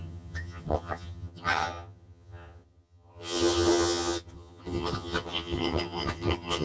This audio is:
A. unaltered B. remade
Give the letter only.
B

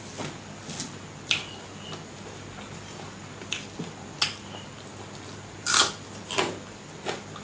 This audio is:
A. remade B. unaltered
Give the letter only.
B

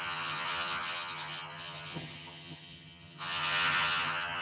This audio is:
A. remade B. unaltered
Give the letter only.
A